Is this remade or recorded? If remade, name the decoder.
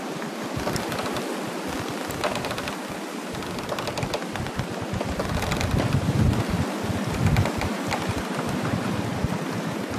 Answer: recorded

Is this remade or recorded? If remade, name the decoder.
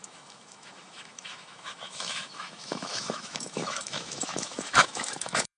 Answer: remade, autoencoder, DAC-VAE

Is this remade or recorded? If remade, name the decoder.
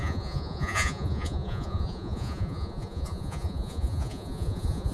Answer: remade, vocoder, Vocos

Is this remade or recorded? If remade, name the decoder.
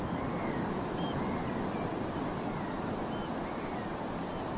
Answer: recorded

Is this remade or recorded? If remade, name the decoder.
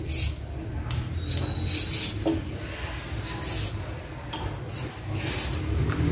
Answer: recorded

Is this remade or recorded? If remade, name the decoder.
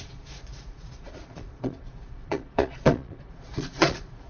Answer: remade, vocoder, Vocos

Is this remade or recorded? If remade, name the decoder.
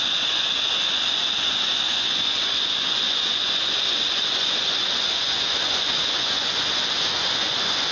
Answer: remade, vocoder, Vocos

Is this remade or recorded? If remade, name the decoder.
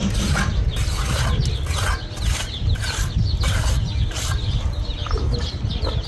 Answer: recorded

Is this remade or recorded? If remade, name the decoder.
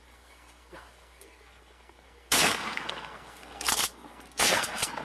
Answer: remade, codec, SNAC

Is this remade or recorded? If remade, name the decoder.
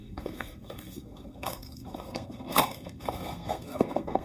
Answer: remade, codec, SNAC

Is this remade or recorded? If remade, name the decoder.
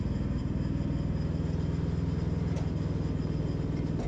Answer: recorded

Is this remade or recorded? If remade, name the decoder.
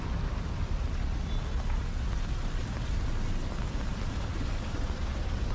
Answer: recorded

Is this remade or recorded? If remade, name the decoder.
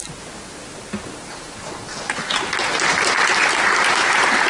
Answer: recorded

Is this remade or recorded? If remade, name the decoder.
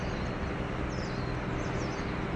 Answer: recorded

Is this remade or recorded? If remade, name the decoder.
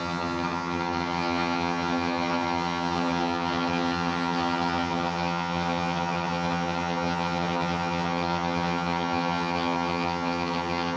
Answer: remade, vocoder, HiFi-GAN